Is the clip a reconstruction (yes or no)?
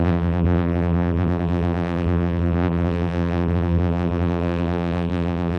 yes